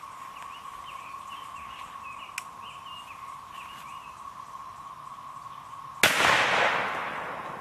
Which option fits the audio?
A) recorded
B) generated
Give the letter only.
A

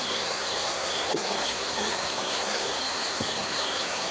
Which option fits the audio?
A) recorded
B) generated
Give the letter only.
B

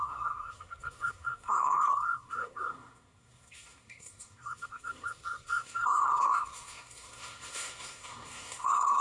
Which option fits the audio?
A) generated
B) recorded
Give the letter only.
A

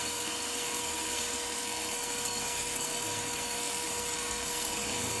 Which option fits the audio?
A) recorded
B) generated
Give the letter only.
B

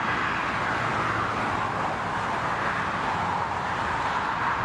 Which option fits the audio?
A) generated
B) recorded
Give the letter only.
B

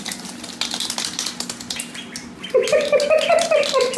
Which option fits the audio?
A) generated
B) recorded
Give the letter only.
B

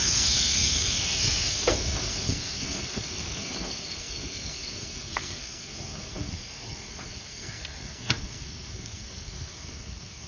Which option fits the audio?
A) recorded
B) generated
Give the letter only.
B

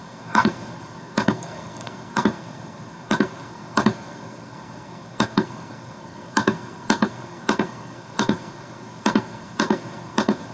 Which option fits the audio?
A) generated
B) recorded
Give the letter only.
A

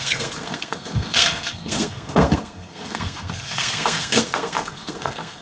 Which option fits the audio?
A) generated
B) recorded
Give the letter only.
A